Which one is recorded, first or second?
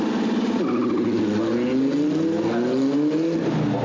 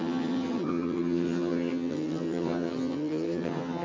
first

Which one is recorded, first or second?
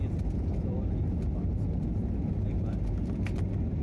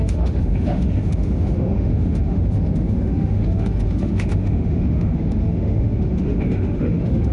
first